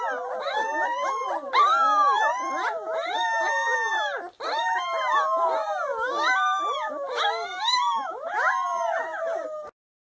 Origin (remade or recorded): recorded